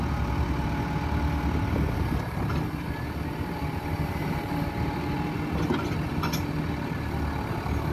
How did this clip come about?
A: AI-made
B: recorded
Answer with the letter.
B